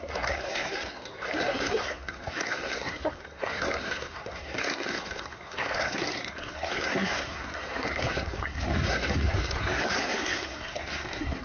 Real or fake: fake